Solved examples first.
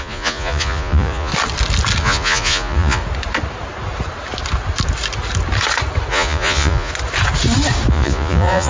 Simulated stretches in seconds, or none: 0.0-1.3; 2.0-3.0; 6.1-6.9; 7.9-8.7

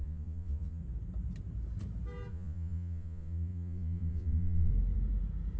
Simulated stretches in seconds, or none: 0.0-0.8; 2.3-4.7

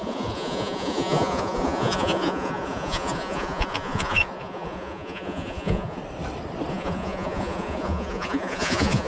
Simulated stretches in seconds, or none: 0.0-6.0; 6.7-9.1

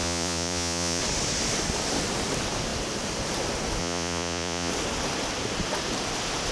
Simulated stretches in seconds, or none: 0.0-1.0; 3.8-4.7

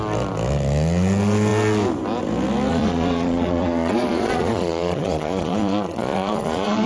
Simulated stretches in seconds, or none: 2.7-6.9